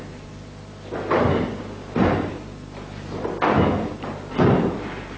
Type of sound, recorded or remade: recorded